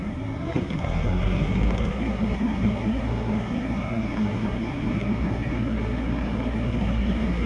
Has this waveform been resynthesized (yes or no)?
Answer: yes